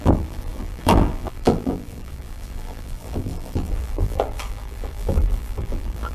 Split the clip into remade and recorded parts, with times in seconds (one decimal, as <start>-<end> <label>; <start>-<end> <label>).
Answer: 0.0-6.1 remade